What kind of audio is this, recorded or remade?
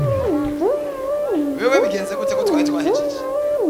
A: recorded